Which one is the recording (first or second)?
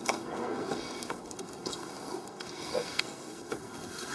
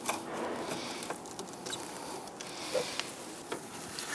second